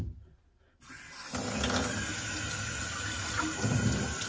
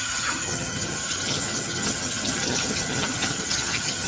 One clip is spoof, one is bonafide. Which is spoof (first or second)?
second